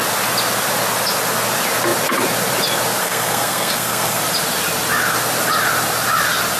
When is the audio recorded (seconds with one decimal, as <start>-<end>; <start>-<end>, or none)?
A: 0.0-3.0; 4.2-6.6